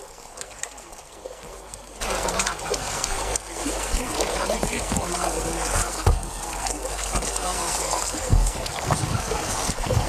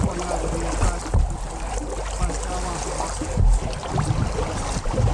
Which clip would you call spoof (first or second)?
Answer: first